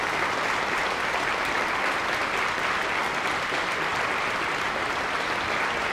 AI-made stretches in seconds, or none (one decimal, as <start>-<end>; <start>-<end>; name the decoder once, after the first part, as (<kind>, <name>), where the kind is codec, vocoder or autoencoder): none